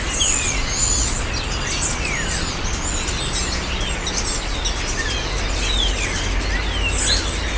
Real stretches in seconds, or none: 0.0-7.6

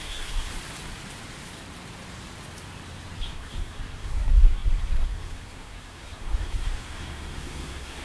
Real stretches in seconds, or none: 0.5-3.2

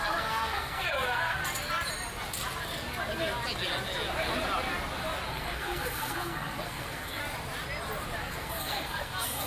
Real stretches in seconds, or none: 1.4-5.3; 7.2-8.2

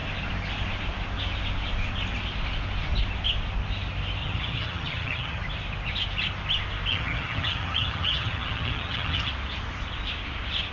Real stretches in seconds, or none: 0.0-4.2; 5.4-6.9; 9.3-10.7

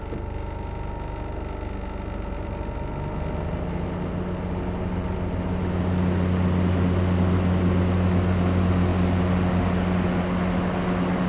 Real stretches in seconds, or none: 0.0-11.3